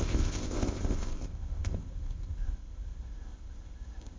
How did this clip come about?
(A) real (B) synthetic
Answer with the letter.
B